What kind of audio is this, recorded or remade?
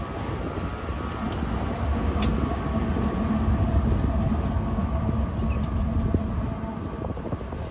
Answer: recorded